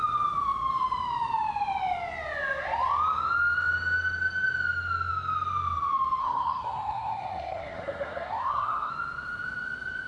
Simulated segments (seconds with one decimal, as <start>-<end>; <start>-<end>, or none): 6.2-8.9